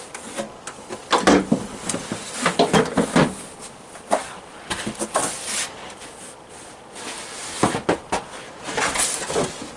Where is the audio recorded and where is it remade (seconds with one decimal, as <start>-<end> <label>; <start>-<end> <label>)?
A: 0.0-9.8 recorded